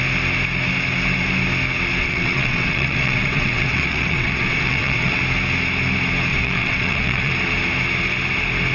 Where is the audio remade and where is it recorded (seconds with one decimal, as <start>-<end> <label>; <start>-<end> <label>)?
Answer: 0.0-2.0 recorded; 2.0-5.2 remade; 5.2-6.3 recorded; 6.3-7.3 remade; 7.3-8.7 recorded